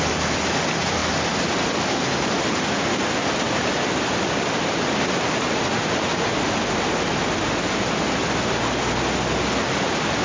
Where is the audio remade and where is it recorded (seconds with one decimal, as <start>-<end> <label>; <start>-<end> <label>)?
0.0-10.2 recorded